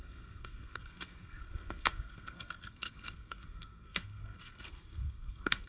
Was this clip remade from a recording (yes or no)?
yes